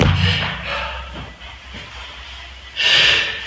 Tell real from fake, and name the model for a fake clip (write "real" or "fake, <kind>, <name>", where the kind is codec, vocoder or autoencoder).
real